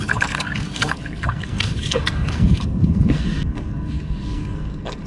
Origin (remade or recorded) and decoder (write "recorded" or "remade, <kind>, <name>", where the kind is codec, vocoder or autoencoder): remade, codec, SNAC